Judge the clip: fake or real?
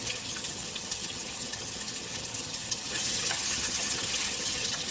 fake